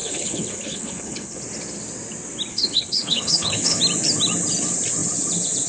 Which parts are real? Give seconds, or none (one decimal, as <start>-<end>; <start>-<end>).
1.4-2.5; 3.8-5.7